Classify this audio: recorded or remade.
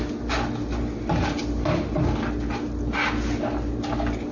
recorded